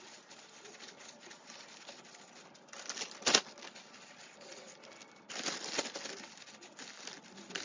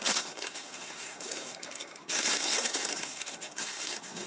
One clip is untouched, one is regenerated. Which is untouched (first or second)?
first